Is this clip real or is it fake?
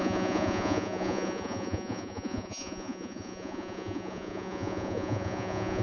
fake